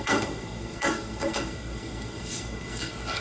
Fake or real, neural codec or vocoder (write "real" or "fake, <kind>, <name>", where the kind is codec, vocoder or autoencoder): fake, codec, SNAC